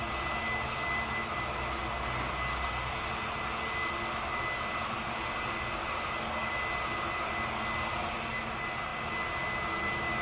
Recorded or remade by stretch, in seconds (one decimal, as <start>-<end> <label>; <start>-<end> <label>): 0.0-5.8 recorded; 5.8-6.5 remade; 6.5-10.2 recorded